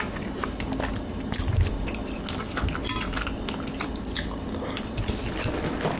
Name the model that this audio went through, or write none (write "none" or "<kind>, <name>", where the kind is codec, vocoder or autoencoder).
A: none